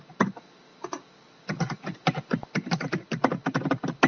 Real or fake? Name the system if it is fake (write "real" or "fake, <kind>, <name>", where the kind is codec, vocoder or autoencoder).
real